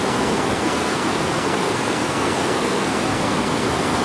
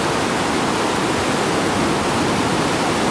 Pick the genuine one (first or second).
second